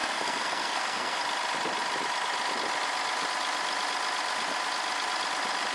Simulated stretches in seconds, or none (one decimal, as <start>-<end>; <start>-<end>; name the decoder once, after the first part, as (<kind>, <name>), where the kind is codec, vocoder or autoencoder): 0.0-1.2 (codec, SNAC)